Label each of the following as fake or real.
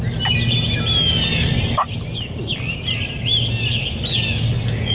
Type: real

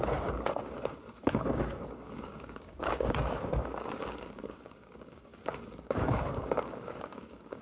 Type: fake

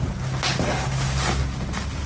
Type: real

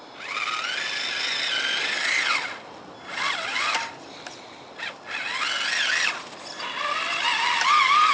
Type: real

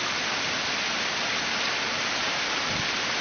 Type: real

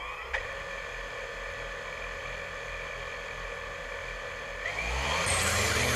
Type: real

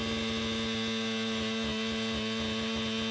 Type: real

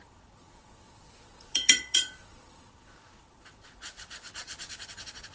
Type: fake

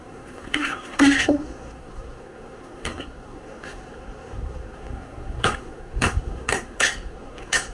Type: fake